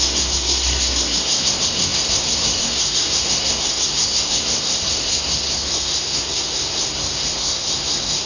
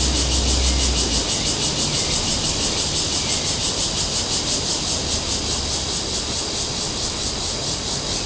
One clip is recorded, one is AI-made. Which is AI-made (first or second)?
first